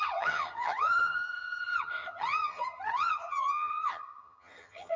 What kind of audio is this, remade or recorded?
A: remade